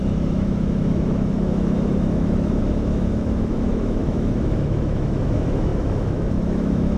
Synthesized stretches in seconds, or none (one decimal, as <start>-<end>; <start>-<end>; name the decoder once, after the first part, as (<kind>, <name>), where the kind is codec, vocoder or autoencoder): 0.0-7.0 (autoencoder, DAC-VAE)